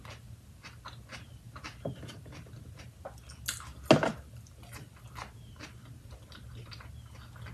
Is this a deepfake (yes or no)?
no